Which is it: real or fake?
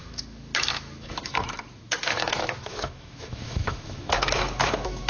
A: fake